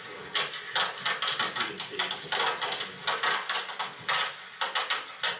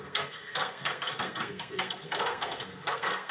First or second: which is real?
first